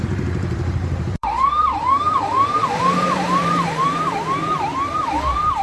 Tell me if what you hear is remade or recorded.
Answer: remade